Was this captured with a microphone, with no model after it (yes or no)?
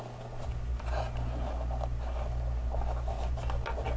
yes